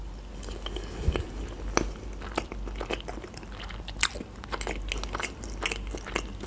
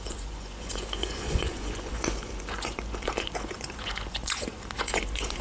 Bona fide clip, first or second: first